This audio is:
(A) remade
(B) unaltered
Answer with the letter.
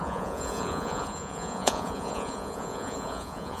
A